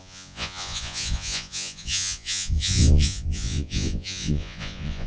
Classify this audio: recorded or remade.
remade